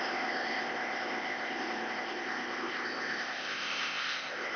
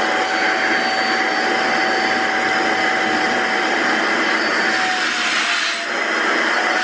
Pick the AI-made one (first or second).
first